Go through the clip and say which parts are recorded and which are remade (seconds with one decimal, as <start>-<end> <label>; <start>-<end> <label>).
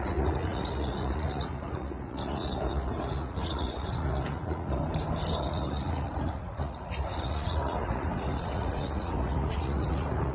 0.0-4.8 remade; 4.8-5.4 recorded; 5.4-10.3 remade